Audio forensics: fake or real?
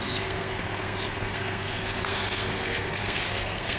fake